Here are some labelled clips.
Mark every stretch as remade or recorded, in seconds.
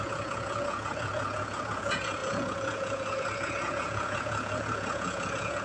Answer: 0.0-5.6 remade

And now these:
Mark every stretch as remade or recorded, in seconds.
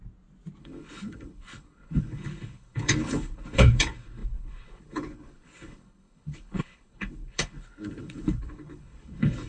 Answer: 0.0-0.6 recorded; 0.6-9.5 remade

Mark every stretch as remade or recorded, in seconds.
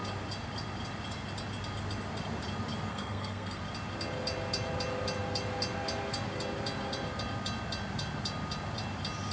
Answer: 0.0-2.9 recorded; 2.9-3.6 remade; 3.6-9.3 recorded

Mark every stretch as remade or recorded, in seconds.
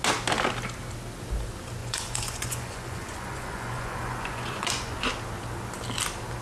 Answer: 0.0-1.8 recorded; 1.8-5.1 remade; 5.1-6.4 recorded